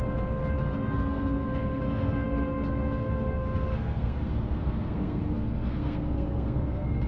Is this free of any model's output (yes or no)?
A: no